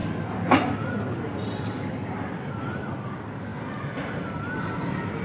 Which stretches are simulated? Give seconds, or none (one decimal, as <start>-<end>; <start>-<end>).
none

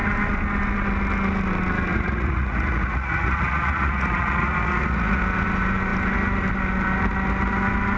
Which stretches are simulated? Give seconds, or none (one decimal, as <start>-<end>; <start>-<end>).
1.9-5.2

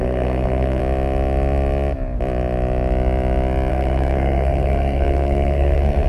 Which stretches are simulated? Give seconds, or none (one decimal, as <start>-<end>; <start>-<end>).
0.0-0.8; 3.7-6.1

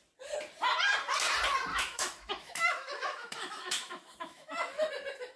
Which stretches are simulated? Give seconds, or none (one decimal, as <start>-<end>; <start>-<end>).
1.7-4.9

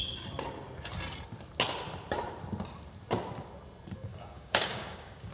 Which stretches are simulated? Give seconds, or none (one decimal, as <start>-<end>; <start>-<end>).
4.1-5.3

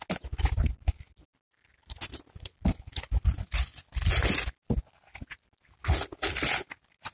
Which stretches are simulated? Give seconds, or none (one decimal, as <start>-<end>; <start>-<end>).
none

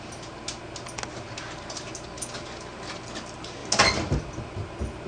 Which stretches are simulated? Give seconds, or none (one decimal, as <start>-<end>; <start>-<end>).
none

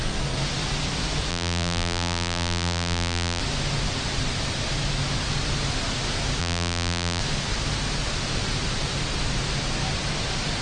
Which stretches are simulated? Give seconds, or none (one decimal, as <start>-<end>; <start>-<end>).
1.3-3.4; 6.4-7.2